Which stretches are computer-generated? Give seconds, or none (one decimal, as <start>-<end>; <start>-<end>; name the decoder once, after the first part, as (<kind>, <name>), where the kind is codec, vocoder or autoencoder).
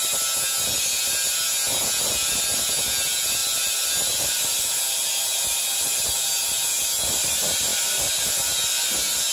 3.4-7.3 (vocoder, BigVGAN v2); 7.7-8.8